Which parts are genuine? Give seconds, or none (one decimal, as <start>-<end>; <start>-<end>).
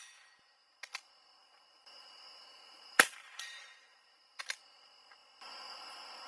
0.0-1.4; 4.6-6.3